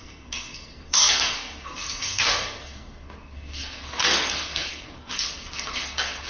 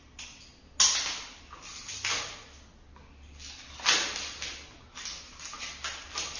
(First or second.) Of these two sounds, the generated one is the first